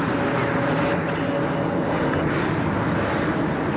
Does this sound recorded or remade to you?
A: recorded